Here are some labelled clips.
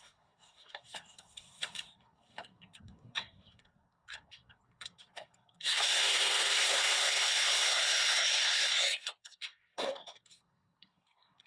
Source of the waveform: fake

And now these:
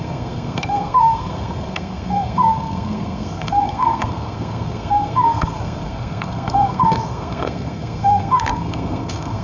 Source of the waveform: fake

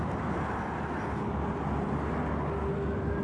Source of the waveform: real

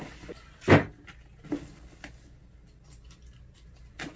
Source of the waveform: real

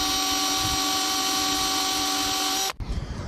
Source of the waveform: real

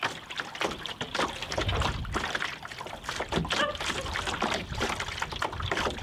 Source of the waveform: real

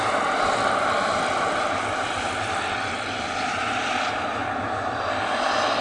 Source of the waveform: real